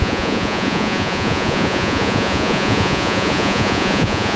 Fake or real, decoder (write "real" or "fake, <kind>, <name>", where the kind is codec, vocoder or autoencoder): fake, vocoder, Vocos